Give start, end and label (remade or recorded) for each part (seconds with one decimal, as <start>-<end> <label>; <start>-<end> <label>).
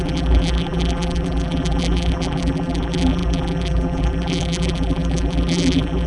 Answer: 0.0-6.1 remade